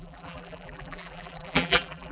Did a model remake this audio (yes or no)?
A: yes